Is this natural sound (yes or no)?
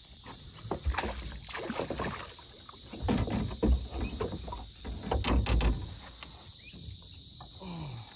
yes